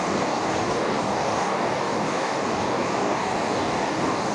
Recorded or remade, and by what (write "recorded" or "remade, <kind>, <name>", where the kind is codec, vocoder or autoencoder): remade, codec, DAC